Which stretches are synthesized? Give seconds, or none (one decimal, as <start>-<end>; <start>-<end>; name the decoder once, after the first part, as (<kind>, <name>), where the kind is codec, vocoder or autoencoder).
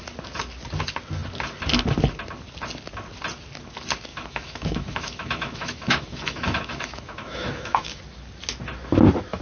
4.1-8.0 (autoencoder, DAC-VAE)